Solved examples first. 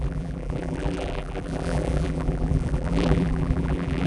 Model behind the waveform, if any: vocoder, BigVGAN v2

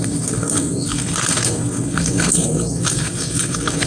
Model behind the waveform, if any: codec, SNAC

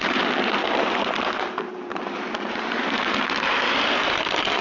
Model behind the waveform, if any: vocoder, BigVGAN v2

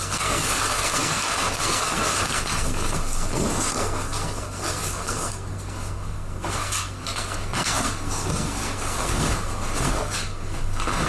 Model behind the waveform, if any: codec, SNAC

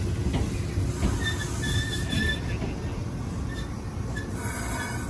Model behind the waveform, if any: none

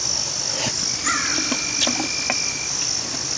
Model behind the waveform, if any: none